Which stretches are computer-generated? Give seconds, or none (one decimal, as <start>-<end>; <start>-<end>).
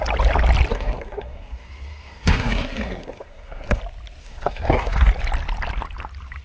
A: 0.7-3.8; 4.2-5.1